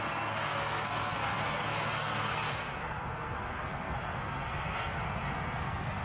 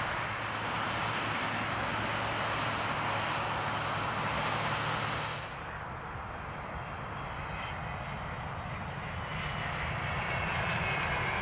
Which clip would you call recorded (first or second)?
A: second